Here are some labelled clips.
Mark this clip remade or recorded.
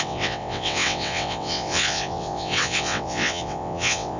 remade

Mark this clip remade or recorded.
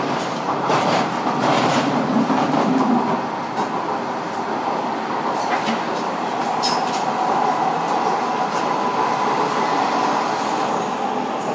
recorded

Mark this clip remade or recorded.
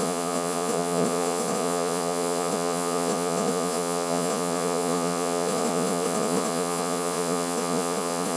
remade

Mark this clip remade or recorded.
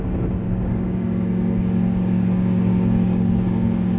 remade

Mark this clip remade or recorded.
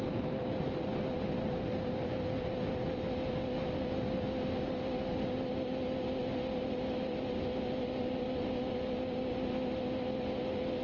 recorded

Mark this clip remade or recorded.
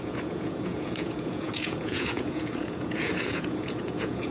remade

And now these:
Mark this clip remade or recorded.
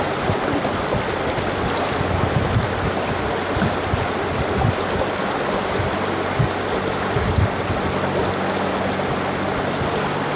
recorded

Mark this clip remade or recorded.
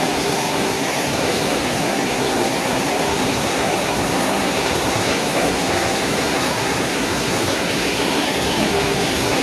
remade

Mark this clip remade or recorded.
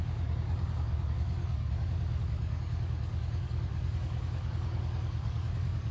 remade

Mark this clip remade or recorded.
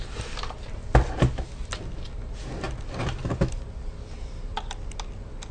recorded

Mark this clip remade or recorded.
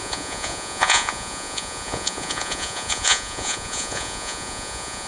remade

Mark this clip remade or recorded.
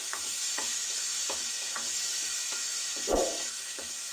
remade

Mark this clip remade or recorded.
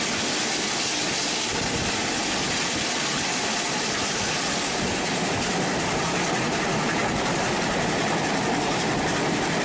recorded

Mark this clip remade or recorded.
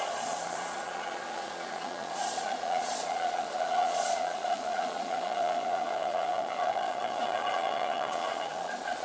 remade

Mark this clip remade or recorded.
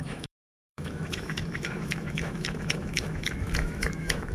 remade